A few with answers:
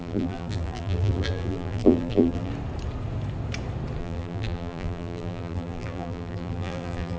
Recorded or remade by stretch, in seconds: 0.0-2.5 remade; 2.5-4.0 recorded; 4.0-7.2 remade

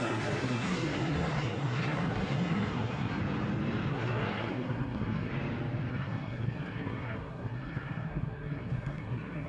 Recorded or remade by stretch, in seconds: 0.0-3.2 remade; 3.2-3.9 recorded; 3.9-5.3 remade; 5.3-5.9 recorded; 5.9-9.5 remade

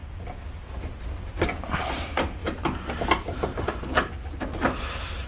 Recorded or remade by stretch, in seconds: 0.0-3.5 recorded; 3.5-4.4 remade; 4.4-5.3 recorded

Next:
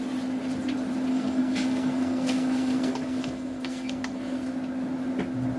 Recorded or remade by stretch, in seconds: 0.0-1.1 recorded; 1.1-4.5 remade; 4.5-5.6 recorded

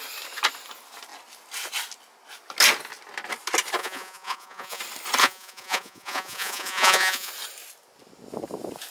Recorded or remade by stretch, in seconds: 0.0-3.8 recorded; 3.8-4.8 remade; 4.8-5.2 recorded; 5.2-7.3 remade; 7.3-8.9 recorded